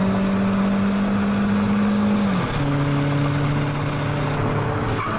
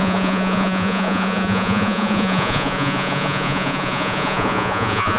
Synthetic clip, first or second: second